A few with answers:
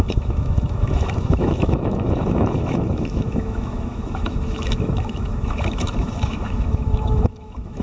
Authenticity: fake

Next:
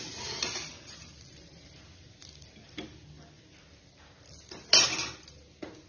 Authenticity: real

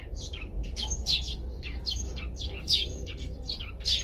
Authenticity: fake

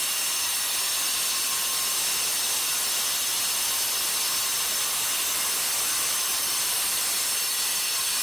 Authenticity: real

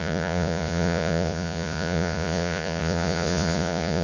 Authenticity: fake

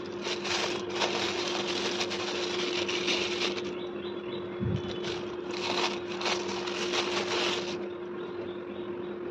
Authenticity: real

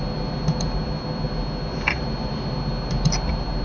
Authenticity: real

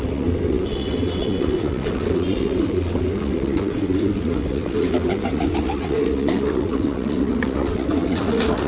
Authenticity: fake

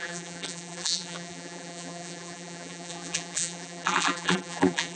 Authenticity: fake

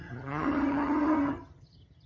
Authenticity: fake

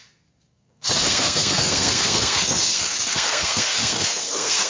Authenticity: fake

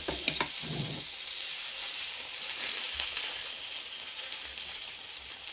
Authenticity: real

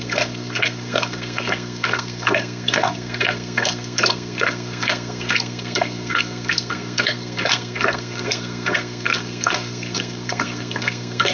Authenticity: fake